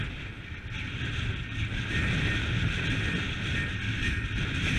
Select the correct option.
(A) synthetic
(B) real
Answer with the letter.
B